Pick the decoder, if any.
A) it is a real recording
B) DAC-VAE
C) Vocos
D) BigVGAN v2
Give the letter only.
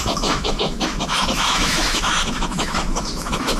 B